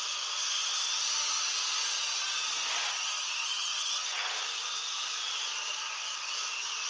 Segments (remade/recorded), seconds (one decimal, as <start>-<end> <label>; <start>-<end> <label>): 0.0-3.5 recorded; 3.5-4.3 remade; 4.3-6.9 recorded